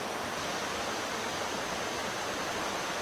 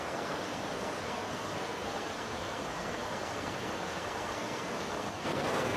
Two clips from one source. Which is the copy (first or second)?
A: second